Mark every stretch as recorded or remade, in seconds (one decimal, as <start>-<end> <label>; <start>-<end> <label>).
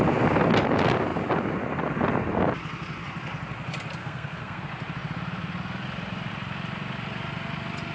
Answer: 0.0-4.0 recorded; 4.0-4.6 remade; 4.6-7.9 recorded